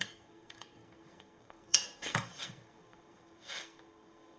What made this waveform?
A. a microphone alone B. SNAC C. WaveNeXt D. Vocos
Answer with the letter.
B